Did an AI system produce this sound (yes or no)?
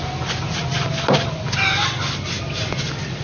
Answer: no